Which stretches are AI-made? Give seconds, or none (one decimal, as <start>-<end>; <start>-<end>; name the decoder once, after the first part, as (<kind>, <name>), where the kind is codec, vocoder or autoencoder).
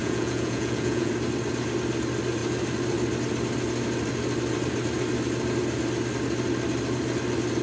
0.0-1.1 (vocoder, Vocos)